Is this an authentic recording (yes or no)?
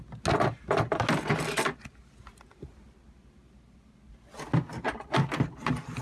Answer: yes